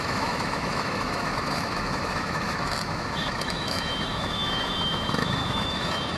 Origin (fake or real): fake